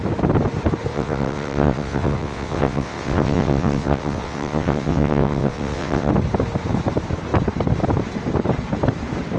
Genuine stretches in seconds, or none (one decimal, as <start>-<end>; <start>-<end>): 0.0-0.9; 6.1-9.4